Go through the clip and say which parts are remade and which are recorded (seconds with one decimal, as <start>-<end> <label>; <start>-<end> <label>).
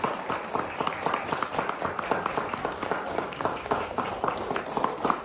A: 0.0-2.6 recorded; 2.6-4.1 remade; 4.1-5.2 recorded